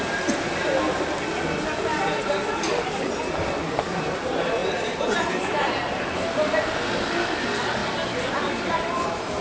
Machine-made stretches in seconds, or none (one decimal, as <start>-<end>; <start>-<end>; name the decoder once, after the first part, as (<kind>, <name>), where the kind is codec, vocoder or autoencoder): none